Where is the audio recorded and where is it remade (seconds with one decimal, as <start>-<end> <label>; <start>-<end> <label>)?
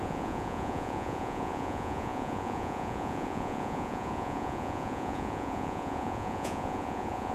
0.0-7.3 remade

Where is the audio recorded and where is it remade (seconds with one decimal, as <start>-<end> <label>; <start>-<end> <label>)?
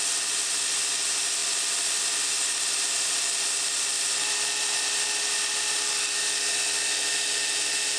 0.0-8.0 recorded